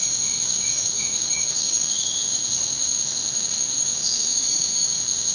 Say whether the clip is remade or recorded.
remade